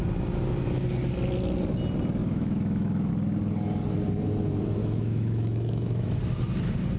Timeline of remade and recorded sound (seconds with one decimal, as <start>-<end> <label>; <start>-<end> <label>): 0.0-2.2 recorded; 2.2-3.1 remade; 3.1-4.8 recorded; 4.8-6.2 remade; 6.2-7.0 recorded